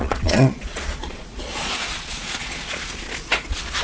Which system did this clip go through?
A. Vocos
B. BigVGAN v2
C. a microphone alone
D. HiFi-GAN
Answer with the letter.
A